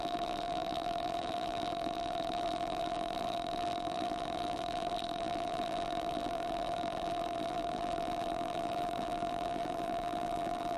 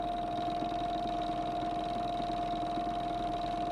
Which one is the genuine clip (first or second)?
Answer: second